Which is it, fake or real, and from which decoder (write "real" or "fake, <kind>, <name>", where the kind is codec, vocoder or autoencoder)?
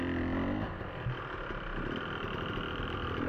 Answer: real